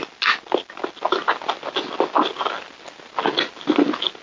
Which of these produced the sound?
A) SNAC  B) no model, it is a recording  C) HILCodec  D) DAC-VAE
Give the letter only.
B